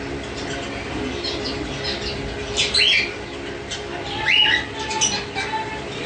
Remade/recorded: recorded